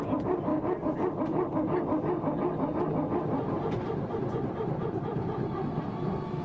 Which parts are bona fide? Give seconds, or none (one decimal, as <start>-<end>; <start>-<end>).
0.5-4.3